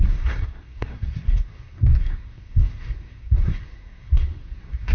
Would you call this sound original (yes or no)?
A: no